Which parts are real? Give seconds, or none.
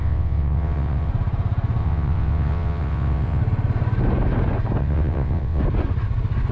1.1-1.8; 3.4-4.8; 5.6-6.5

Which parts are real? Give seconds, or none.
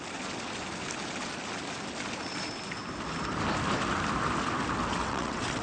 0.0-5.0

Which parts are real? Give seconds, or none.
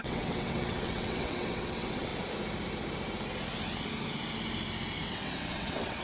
2.1-5.0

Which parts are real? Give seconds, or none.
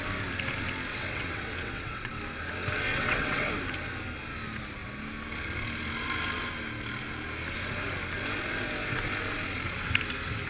0.0-0.9; 2.1-2.9; 3.5-10.5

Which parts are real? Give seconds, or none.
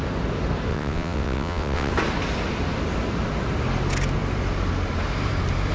0.0-0.7; 1.9-5.7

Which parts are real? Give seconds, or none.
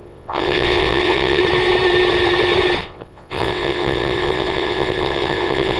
1.4-2.8